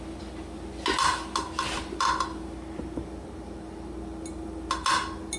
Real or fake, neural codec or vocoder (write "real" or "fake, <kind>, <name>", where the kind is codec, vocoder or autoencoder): real